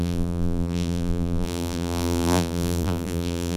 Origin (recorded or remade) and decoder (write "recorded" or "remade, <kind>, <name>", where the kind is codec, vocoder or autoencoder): remade, vocoder, BigVGAN v2